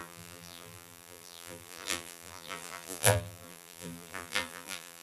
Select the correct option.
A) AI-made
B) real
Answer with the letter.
A